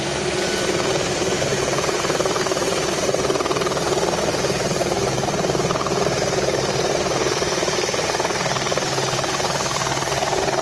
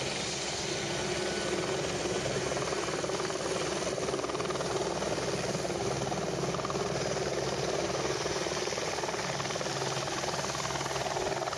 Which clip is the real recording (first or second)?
second